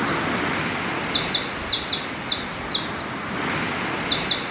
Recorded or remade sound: recorded